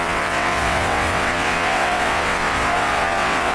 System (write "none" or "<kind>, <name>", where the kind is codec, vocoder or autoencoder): vocoder, WaveNeXt